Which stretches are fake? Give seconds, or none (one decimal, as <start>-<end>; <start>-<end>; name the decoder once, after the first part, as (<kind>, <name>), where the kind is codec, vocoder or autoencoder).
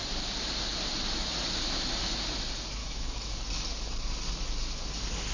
2.8-3.3 (autoencoder, DAC-VAE)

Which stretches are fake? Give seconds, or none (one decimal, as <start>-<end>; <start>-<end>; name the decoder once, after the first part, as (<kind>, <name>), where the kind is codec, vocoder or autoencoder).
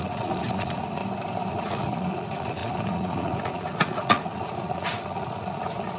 0.0-1.0 (vocoder, Vocos); 1.5-6.0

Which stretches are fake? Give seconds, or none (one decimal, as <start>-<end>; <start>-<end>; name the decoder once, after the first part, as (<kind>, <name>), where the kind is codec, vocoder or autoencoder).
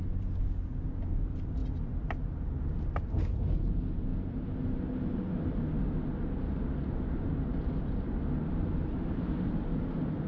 none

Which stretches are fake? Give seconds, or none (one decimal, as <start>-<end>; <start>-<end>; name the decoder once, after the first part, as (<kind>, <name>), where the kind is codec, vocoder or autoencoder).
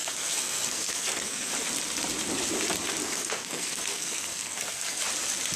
0.0-1.5 (codec, SNAC); 3.0-5.0